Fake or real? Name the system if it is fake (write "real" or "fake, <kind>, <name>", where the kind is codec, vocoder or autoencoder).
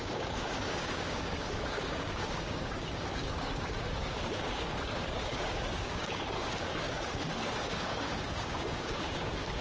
fake, codec, DAC